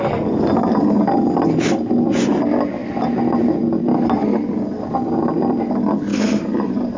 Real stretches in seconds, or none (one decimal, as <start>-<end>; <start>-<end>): 0.0-6.1